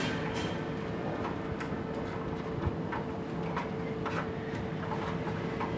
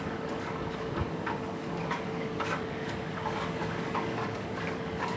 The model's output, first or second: second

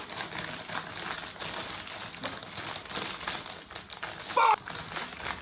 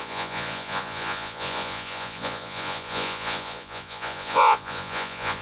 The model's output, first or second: second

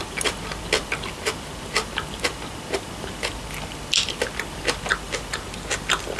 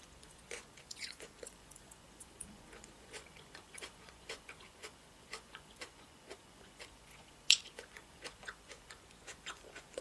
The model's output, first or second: second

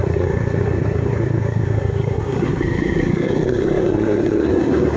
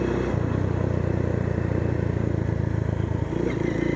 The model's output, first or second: first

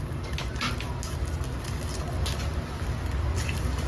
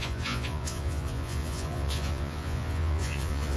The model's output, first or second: second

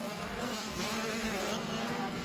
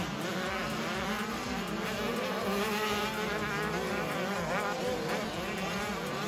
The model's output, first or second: first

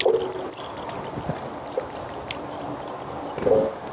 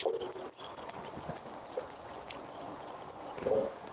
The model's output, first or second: second